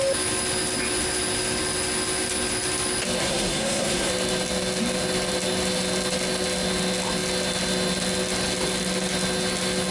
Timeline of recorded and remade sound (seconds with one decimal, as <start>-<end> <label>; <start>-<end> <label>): 0.0-3.2 recorded; 3.2-4.1 remade; 4.1-9.9 recorded